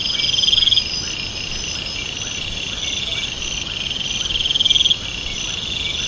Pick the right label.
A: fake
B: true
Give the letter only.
B